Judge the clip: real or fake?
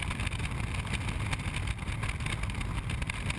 real